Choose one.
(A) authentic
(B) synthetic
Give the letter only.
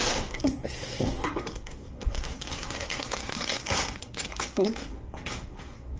B